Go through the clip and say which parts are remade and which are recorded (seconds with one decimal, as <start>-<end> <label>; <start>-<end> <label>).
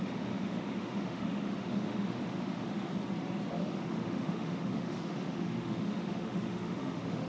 0.0-2.9 remade; 2.9-3.5 recorded; 3.5-7.3 remade